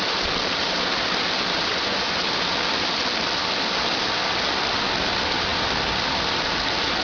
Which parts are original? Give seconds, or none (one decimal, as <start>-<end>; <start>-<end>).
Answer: 0.0-1.7; 2.2-7.0